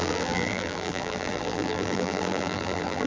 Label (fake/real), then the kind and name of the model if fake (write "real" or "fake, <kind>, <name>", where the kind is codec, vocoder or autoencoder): fake, vocoder, BigVGAN v2